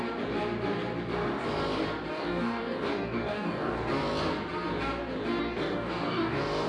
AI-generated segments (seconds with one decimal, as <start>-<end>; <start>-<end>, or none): 2.1-3.9; 5.4-6.7